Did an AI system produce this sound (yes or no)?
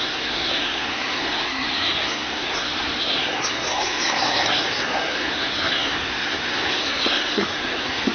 yes